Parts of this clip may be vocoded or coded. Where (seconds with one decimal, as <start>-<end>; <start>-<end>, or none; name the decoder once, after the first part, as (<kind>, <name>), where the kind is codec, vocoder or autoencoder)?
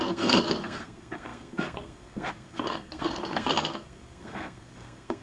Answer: 0.0-5.2 (codec, SNAC)